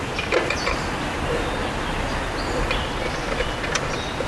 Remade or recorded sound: recorded